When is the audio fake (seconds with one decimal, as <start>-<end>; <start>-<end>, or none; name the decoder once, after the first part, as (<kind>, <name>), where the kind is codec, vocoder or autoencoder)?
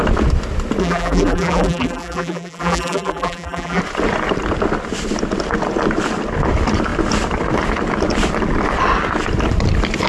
0.8-3.8 (vocoder, BigVGAN v2)